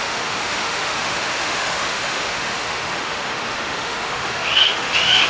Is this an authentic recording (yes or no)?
no